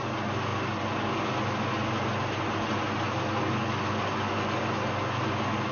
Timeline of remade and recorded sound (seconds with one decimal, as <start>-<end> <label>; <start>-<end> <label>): 0.0-5.7 recorded